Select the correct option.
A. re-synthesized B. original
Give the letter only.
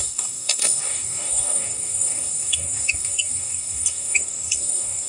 A